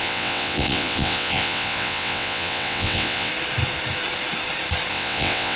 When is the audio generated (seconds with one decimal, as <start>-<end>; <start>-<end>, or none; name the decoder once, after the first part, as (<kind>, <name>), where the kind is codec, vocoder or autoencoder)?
0.0-3.3 (vocoder, WaveNeXt); 4.9-5.6